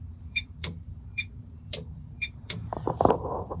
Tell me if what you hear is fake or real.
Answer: fake